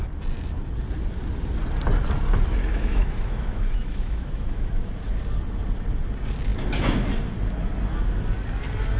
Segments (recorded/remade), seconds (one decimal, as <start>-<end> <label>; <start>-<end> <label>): 0.0-2.7 recorded; 2.7-4.7 remade; 4.7-9.0 recorded